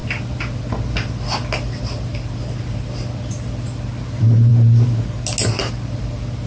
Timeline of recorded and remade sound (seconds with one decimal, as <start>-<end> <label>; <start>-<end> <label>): 0.0-6.5 recorded